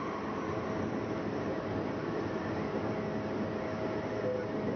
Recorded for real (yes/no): yes